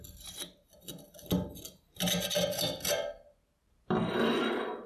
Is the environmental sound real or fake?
real